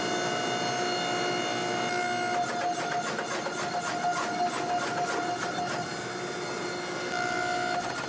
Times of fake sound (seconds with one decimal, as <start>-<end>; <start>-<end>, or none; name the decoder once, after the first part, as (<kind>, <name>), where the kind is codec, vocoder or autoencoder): none